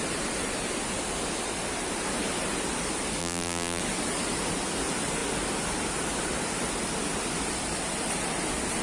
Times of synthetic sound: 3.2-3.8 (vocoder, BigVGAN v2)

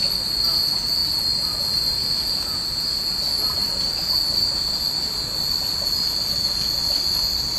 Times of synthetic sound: none

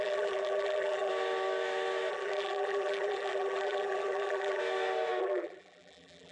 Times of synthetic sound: 0.0-1.1 (vocoder, BigVGAN v2); 2.1-4.6; 5.2-6.3

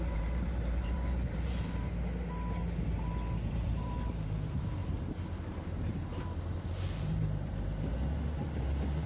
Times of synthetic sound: 0.0-1.9 (vocoder, BigVGAN v2); 3.5-9.1

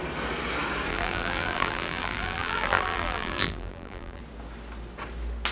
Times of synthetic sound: 0.9-4.2 (vocoder, BigVGAN v2)